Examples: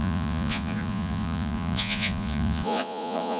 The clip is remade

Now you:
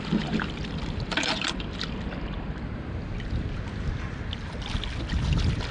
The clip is recorded